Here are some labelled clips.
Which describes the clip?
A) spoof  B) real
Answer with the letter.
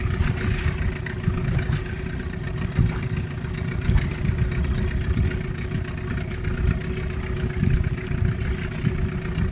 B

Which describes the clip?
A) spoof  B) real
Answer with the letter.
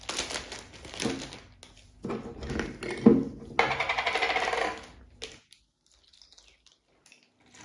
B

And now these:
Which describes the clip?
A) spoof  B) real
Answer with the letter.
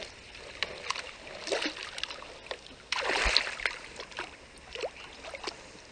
B